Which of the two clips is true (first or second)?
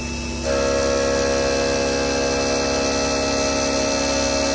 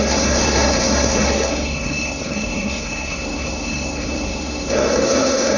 first